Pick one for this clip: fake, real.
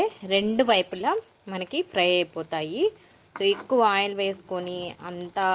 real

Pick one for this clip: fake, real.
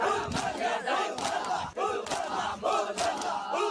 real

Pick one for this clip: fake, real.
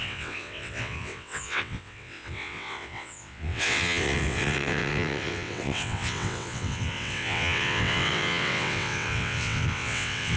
fake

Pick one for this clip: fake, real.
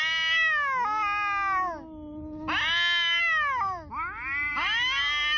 real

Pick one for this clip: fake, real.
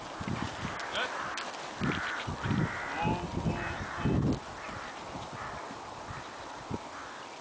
real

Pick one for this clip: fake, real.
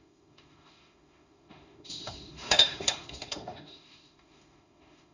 fake